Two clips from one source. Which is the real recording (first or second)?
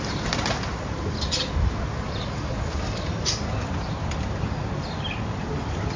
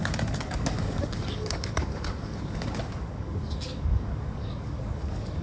first